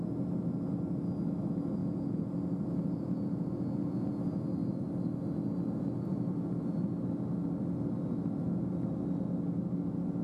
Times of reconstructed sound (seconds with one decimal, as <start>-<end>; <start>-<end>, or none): 1.8-2.3; 2.7-4.1